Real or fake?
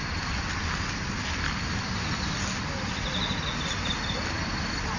real